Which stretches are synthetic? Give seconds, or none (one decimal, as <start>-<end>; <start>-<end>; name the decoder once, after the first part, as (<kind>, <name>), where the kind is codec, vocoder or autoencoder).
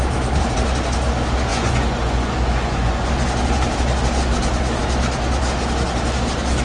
1.5-3.1 (vocoder, Vocos)